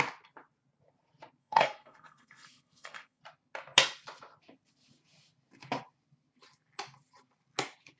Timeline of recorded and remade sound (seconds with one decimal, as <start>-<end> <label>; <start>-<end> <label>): 0.0-1.4 recorded; 1.4-3.2 remade; 3.2-8.0 recorded

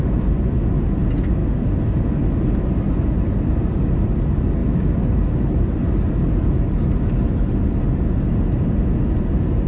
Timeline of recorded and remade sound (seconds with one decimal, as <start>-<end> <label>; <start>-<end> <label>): 0.0-9.7 recorded